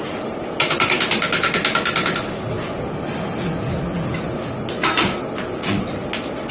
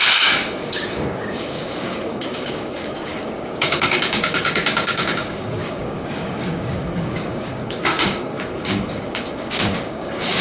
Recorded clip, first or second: first